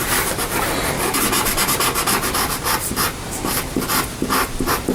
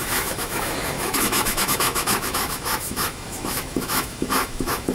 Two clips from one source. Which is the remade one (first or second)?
second